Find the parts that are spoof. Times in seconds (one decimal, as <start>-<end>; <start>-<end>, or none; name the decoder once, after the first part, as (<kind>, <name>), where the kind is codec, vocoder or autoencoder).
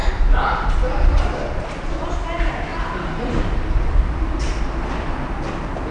0.0-0.7 (vocoder, BigVGAN v2); 2.7-3.4